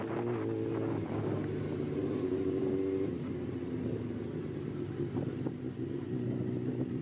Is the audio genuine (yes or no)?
yes